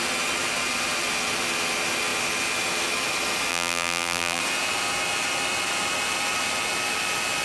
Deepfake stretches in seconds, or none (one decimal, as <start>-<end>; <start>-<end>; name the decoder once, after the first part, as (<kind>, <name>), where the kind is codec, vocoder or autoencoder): 3.5-4.4 (vocoder, BigVGAN v2)